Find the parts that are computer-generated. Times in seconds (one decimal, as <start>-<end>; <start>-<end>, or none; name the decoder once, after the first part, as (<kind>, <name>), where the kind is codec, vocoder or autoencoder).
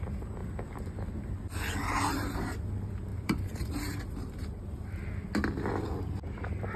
3.1-5.1 (vocoder, BigVGAN v2)